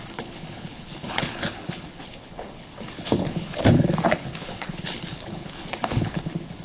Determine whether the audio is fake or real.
fake